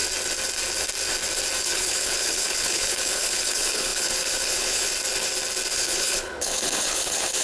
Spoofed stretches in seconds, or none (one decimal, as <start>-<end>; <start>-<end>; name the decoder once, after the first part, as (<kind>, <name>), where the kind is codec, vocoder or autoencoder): 1.6-4.9 (codec, HILCodec); 5.7-7.4